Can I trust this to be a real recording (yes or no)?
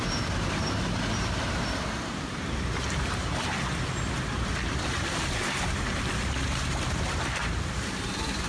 no